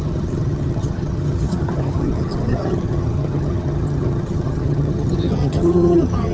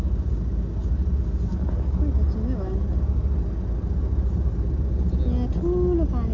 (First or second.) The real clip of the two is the second